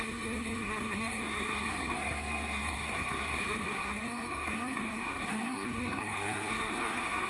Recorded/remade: remade